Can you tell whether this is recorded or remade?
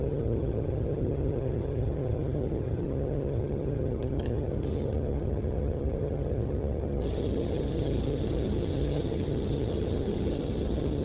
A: remade